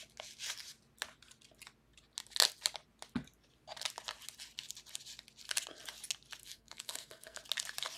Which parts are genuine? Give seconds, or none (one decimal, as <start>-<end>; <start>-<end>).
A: 0.0-6.4; 7.4-8.0